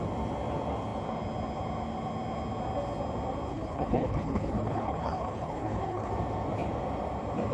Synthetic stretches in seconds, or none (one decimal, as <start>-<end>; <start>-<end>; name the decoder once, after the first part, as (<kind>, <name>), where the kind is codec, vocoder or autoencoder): 3.5-6.1 (codec, HILCodec)